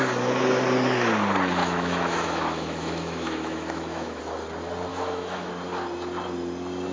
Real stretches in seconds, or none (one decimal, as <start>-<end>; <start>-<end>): 0.0-1.6; 4.2-4.9; 5.5-6.9